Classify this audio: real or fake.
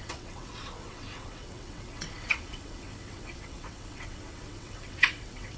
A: fake